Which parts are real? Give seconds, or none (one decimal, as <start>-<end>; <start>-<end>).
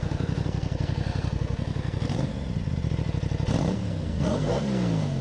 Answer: 2.3-3.6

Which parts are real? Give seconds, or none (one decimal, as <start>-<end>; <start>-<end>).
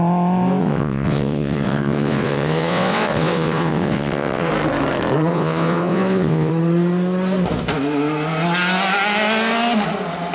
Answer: 0.0-0.6; 4.5-5.3; 6.5-10.3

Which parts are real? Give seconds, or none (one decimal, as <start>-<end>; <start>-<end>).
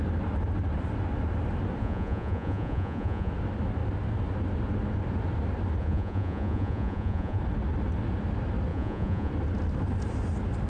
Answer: 0.0-1.8; 3.3-5.8; 7.4-8.7; 9.3-10.7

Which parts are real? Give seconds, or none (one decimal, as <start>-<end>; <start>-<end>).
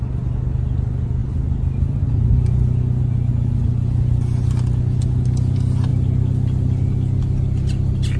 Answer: 0.0-8.2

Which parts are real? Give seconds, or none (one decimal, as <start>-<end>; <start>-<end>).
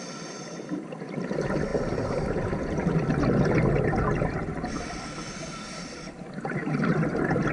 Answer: 1.7-5.5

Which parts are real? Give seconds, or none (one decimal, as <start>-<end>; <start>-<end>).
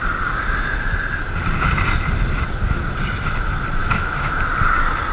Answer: 0.0-3.8; 4.4-5.1